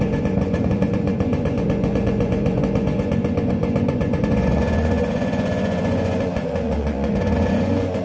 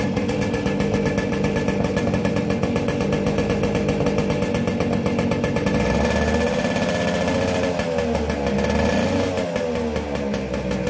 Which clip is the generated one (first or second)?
first